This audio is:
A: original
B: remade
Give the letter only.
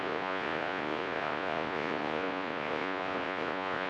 B